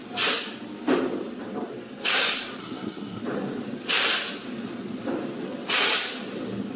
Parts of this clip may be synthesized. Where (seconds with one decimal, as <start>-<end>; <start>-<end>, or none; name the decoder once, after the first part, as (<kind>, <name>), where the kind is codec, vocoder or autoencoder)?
2.6-3.2 (codec, SNAC)